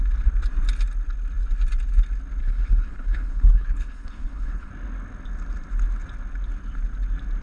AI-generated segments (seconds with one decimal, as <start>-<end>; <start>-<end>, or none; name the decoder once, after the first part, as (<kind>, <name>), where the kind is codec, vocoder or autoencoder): 2.4-4.7 (codec, HILCodec)